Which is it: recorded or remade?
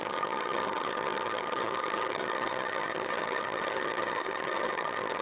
remade